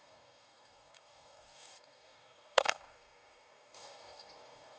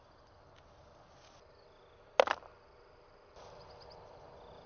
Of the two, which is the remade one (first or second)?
first